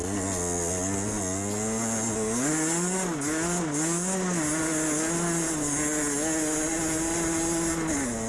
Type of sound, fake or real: real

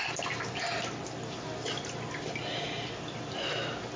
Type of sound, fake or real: real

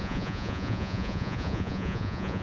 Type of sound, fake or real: fake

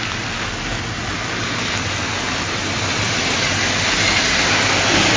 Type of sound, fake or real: real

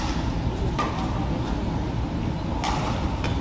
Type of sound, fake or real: real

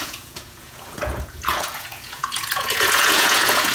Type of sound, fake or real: fake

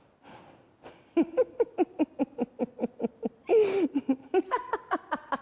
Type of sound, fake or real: real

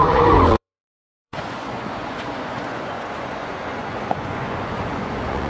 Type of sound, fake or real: fake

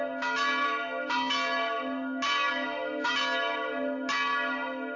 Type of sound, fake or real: real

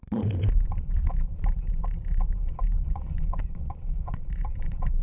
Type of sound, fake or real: fake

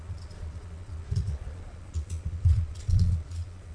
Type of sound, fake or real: fake